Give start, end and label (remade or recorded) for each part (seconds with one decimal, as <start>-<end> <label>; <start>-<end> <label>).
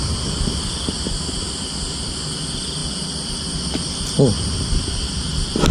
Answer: 0.0-5.7 recorded